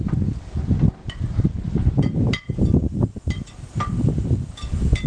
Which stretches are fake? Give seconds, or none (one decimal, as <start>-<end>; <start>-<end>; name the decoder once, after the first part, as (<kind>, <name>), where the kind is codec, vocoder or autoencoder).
2.8-3.8 (vocoder, BigVGAN v2)